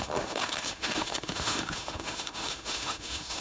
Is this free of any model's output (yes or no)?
no